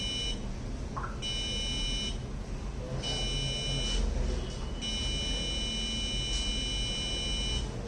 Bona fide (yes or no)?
yes